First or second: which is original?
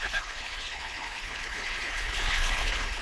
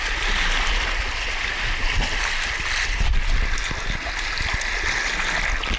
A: second